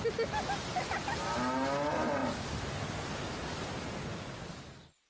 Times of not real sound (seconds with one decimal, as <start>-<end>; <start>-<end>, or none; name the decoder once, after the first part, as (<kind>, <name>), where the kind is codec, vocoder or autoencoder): none